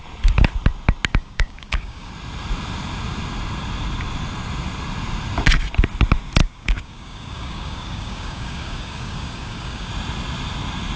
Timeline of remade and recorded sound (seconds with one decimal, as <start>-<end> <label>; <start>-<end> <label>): 0.0-1.1 recorded; 1.1-2.1 remade; 2.1-6.4 recorded; 6.4-9.9 remade; 9.9-11.0 recorded